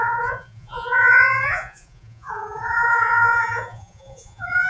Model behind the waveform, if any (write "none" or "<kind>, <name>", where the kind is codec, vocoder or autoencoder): vocoder, Vocos